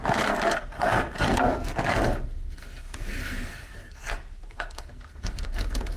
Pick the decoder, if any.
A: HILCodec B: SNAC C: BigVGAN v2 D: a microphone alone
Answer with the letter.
B